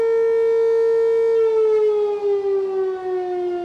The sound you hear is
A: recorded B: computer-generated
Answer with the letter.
A